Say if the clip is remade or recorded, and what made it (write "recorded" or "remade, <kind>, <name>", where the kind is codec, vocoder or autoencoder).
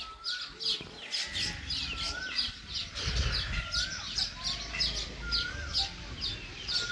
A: recorded